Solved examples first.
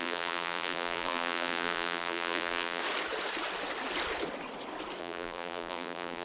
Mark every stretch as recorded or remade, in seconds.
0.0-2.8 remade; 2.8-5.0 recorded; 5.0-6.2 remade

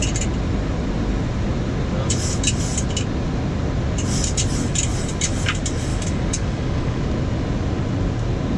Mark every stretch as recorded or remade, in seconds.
0.0-5.9 recorded; 5.9-7.0 remade; 7.0-8.6 recorded

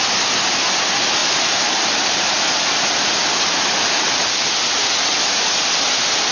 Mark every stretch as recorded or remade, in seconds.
0.0-6.3 recorded

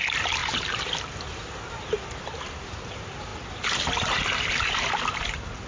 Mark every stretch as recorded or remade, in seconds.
0.0-0.4 recorded; 0.4-2.9 remade; 2.9-5.7 recorded

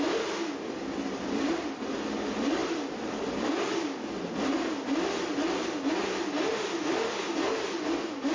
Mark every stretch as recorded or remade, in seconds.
0.0-8.3 recorded

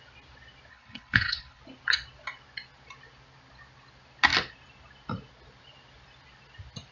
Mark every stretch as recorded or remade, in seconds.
0.0-0.7 recorded; 0.7-1.6 remade; 1.6-6.9 recorded

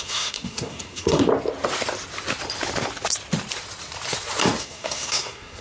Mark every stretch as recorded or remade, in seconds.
0.0-1.2 remade; 1.2-4.6 recorded; 4.6-5.6 remade